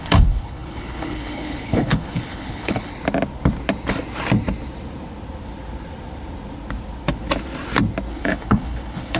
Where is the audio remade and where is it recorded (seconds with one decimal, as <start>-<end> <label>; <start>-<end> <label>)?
0.0-2.9 remade; 2.9-8.1 recorded; 8.1-9.2 remade